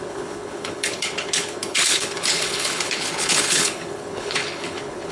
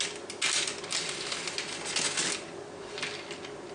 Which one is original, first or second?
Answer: second